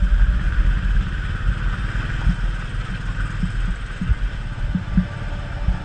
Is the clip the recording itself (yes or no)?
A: yes